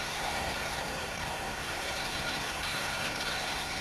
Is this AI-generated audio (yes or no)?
yes